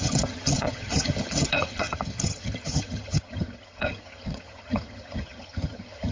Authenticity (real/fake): fake